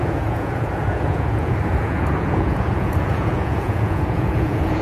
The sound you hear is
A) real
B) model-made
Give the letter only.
B